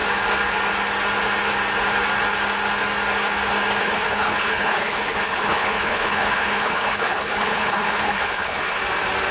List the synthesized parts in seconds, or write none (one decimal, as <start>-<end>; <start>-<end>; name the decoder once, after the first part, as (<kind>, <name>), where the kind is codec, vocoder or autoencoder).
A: 3.8-8.8 (codec, HILCodec)